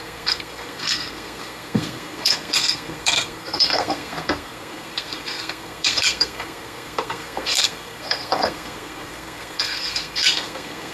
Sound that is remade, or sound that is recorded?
remade